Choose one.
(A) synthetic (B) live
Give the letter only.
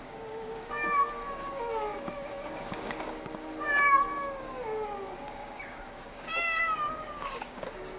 A